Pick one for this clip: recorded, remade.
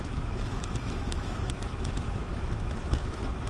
remade